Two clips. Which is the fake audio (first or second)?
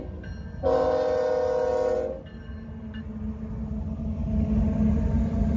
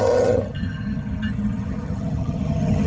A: second